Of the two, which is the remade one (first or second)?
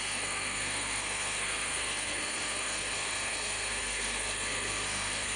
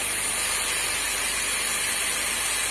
first